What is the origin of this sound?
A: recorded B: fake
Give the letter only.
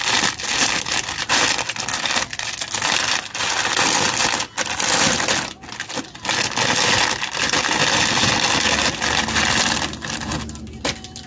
A